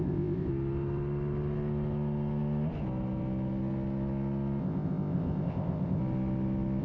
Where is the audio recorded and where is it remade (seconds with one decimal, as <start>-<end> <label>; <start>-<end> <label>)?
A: 0.0-0.5 remade; 0.5-4.6 recorded; 4.6-6.0 remade; 6.0-6.8 recorded